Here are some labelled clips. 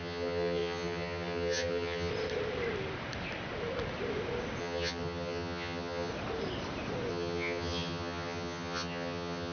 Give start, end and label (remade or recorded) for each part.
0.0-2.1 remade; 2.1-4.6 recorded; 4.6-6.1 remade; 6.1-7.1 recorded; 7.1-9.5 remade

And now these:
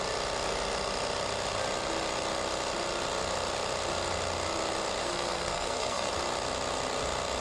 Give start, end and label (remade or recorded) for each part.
0.0-5.0 recorded; 5.0-6.1 remade; 6.1-7.4 recorded